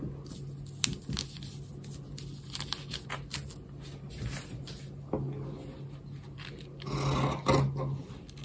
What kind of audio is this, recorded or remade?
recorded